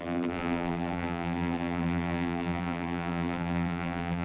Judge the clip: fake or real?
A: fake